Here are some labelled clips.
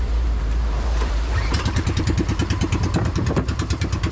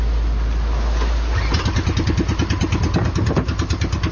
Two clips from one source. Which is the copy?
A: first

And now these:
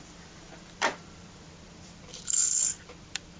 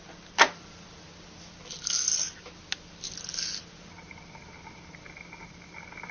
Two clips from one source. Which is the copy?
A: first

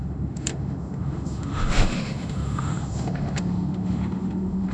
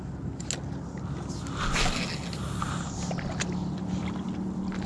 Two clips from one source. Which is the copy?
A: first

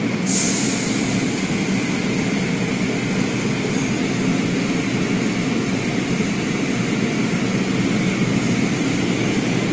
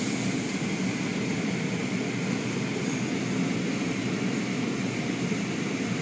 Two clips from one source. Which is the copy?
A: second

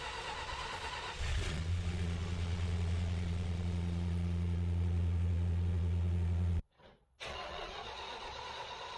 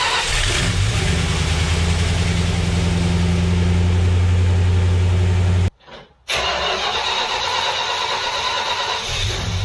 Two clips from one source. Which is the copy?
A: first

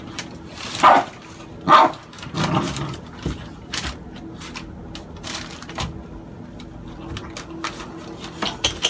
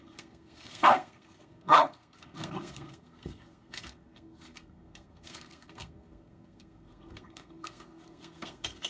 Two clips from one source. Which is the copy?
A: second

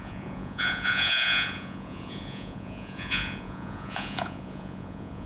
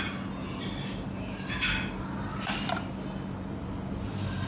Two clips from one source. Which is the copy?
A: first